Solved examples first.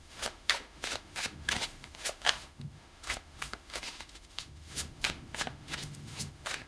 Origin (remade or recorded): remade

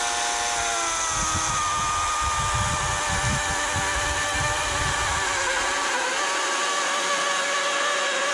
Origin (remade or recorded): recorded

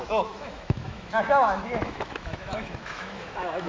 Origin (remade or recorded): remade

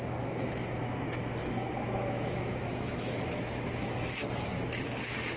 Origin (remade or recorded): remade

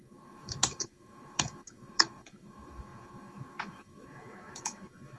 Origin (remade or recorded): remade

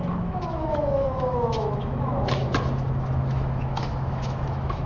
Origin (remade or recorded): remade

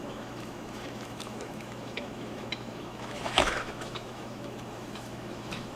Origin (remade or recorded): remade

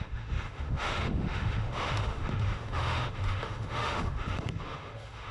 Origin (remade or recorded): remade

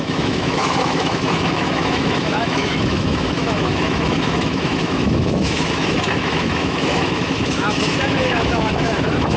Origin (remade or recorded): remade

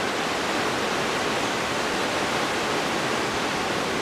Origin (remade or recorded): recorded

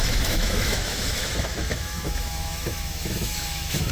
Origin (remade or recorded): remade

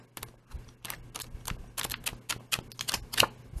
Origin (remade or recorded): recorded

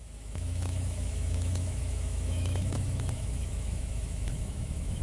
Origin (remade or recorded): remade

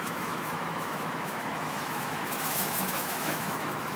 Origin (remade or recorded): remade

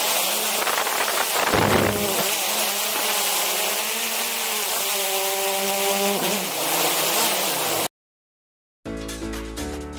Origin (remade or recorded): recorded